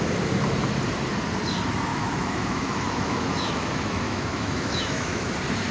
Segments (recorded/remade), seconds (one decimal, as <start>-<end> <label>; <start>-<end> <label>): 0.0-1.9 recorded; 1.9-5.3 remade; 5.3-5.7 recorded